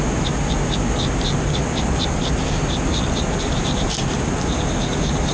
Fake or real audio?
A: real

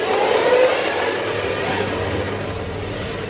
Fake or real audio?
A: real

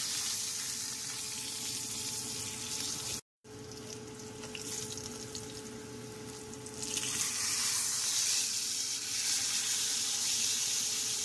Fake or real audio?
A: real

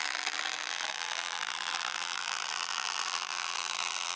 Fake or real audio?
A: fake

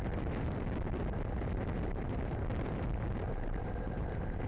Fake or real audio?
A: fake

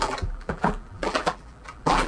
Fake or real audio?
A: fake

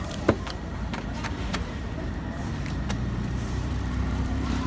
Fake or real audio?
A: fake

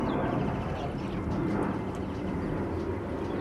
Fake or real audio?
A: real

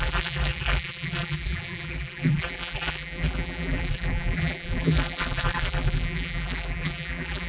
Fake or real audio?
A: fake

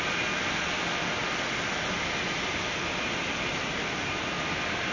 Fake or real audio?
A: real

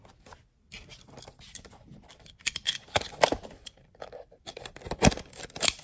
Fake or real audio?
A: fake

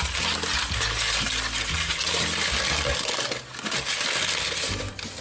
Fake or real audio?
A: real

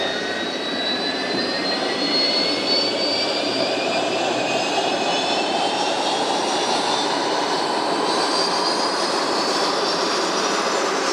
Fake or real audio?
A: fake